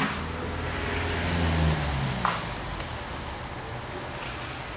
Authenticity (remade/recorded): recorded